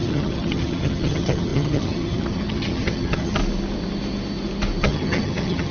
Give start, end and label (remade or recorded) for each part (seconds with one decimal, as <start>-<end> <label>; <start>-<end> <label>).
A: 0.0-3.4 remade; 3.4-4.8 recorded; 4.8-5.7 remade